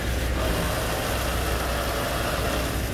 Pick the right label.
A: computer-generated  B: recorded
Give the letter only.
B